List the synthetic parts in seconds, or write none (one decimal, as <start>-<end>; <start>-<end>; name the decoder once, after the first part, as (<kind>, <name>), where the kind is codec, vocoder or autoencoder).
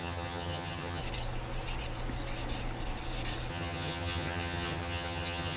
0.0-1.0 (vocoder, HiFi-GAN); 3.5-5.6